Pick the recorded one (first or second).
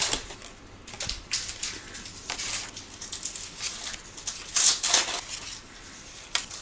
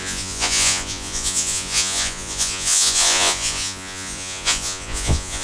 first